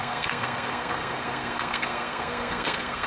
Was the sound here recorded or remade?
remade